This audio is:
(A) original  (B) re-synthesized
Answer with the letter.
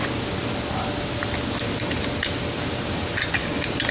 A